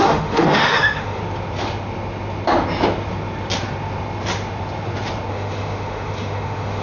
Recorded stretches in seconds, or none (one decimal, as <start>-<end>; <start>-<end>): 1.2-5.3